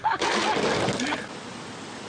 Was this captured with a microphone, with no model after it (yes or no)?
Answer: yes